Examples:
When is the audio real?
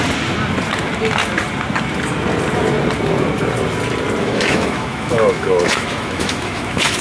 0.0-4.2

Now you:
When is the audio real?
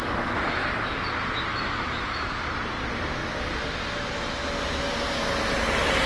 0.6-1.5; 2.4-6.1